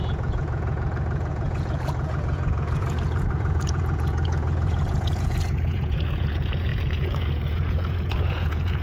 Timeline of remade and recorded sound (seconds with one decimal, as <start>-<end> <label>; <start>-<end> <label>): 0.0-8.8 remade